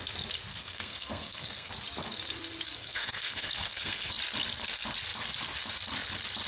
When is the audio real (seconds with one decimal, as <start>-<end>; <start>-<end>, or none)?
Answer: 0.0-0.5; 1.7-2.8; 4.1-6.5